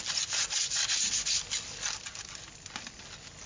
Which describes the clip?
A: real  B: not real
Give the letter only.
A